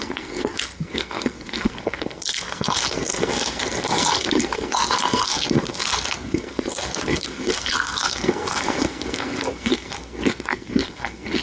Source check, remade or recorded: remade